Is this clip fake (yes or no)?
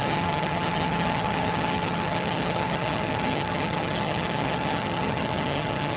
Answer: yes